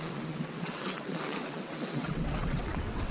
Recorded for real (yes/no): no